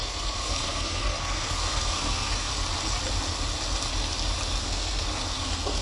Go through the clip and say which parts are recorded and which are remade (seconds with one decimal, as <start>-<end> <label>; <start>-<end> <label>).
0.0-2.5 remade; 2.5-4.6 recorded; 4.6-5.8 remade